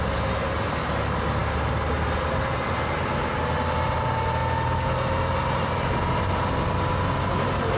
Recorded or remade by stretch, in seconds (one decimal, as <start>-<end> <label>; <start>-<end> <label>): 0.0-7.8 recorded